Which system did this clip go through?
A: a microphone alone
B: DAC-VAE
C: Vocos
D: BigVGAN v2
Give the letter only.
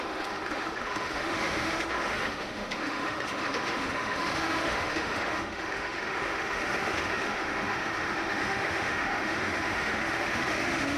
B